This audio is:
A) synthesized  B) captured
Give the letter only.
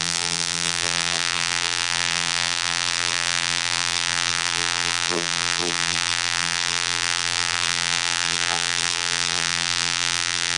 A